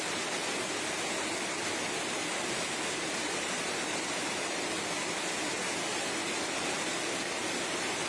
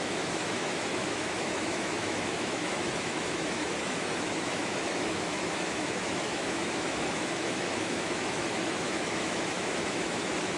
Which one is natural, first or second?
first